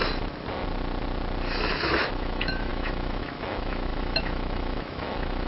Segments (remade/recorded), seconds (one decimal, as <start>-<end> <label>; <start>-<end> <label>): 0.0-1.9 recorded; 1.9-5.5 remade